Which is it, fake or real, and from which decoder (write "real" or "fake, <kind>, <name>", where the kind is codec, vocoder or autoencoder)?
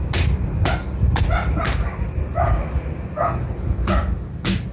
real